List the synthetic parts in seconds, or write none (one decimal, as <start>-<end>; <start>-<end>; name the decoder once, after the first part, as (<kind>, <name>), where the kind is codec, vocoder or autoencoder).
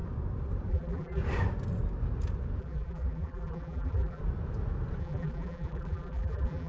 0.7-1.2 (vocoder, BigVGAN v2); 2.6-4.2; 5.0-6.7